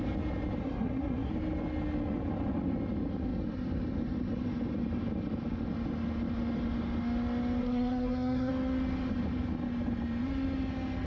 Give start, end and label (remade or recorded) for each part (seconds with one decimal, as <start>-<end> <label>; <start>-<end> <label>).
0.0-0.6 recorded; 0.6-1.3 remade; 1.3-7.6 recorded; 7.6-8.5 remade; 8.5-11.1 recorded